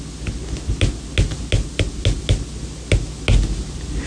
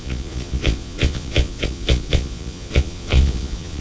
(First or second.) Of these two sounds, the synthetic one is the second